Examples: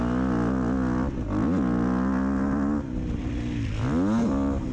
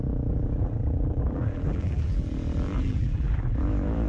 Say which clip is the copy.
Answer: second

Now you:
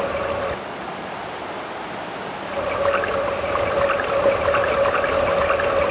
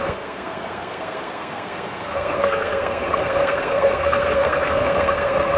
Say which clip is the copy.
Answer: second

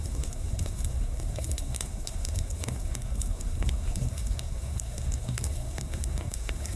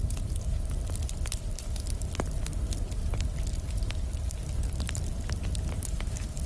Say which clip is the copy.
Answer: first